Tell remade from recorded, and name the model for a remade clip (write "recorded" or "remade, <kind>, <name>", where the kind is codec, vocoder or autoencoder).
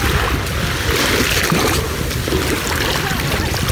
recorded